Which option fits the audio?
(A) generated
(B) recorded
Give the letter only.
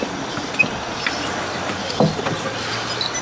B